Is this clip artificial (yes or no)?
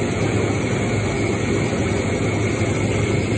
yes